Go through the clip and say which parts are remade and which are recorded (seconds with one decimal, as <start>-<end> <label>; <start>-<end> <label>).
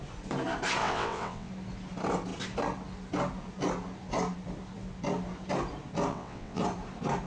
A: 0.0-0.8 recorded; 0.8-1.5 remade; 1.5-6.1 recorded; 6.1-6.6 remade; 6.6-7.3 recorded